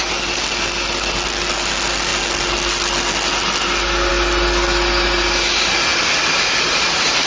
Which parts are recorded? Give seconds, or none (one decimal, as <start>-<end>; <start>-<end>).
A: 0.0-5.9